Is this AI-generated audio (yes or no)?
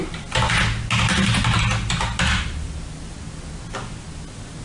no